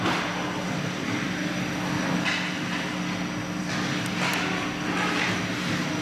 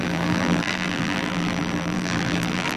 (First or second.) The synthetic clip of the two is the second